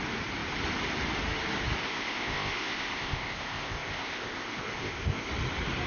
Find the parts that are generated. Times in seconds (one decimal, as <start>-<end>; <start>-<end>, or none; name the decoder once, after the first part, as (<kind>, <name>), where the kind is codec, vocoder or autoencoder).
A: 1.8-5.3 (codec, ZipCodec)